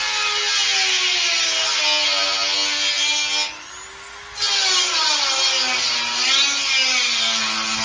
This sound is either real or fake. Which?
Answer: real